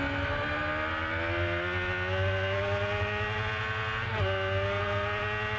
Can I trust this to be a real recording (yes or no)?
yes